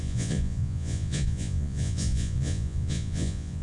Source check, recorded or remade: remade